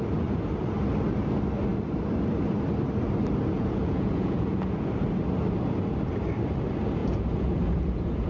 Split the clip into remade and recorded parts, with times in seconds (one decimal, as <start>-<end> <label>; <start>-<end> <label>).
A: 0.0-3.5 recorded; 3.5-4.9 remade; 4.9-7.0 recorded; 7.0-8.3 remade